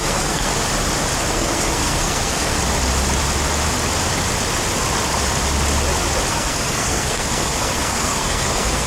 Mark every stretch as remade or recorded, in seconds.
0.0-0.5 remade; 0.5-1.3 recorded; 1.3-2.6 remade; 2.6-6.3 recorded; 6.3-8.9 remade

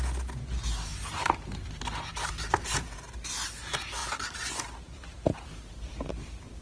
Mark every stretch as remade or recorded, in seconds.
0.0-0.9 recorded; 0.9-2.3 remade; 2.3-4.0 recorded; 4.0-4.5 remade; 4.5-6.6 recorded

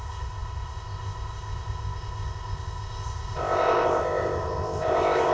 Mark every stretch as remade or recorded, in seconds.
0.0-5.3 remade

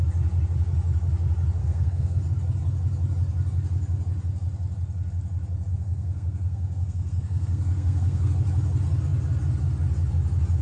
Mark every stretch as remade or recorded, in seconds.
0.0-1.6 recorded; 1.6-2.2 remade; 2.2-5.7 recorded; 5.7-8.3 remade; 8.3-10.6 recorded

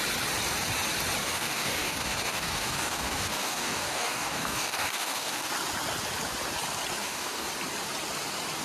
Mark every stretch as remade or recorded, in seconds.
0.0-1.2 recorded; 1.2-5.5 remade; 5.5-7.0 recorded; 7.0-7.5 remade; 7.5-8.6 recorded

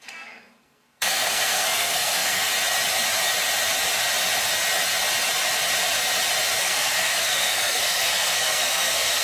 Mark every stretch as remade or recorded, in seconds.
0.0-2.5 remade; 2.5-6.6 recorded; 6.6-9.2 remade

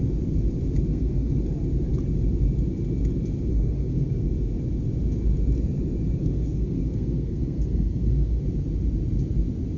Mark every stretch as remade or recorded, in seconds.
0.0-0.9 recorded; 0.9-1.4 remade; 1.4-3.5 recorded; 3.5-4.3 remade; 4.3-6.2 recorded; 6.2-8.4 remade; 8.4-9.8 recorded